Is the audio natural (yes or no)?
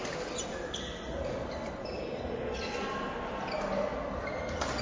yes